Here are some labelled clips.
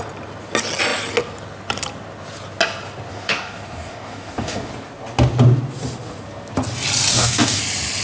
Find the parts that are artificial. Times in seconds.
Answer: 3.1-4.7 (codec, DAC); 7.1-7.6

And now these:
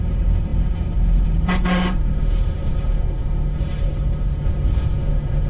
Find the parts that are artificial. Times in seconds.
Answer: 0.0-5.5 (autoencoder, DAC-VAE)

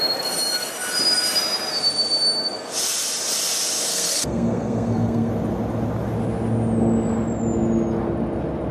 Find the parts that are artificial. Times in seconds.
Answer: 3.9-5.3 (codec, SNAC)